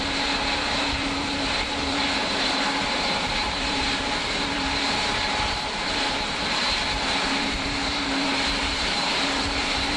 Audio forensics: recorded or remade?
remade